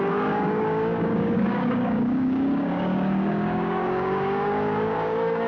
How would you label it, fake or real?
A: fake